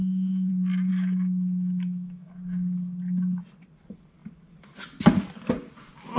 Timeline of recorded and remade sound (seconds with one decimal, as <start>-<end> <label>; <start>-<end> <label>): 0.0-0.5 remade; 0.5-0.9 recorded; 0.9-2.3 remade; 2.3-6.2 recorded